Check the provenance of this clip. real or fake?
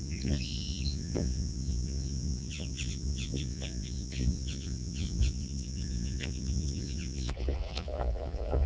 fake